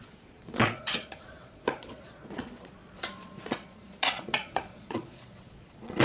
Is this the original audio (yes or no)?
no